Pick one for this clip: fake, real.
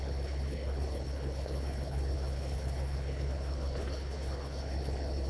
fake